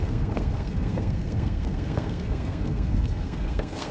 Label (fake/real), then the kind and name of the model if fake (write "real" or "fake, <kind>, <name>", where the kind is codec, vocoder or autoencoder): fake, codec, SNAC